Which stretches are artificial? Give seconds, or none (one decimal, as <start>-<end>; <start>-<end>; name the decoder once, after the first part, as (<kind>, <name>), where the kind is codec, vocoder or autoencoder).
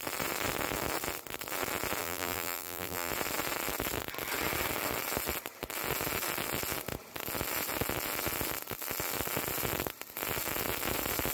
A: 2.0-3.1 (vocoder, BigVGAN v2)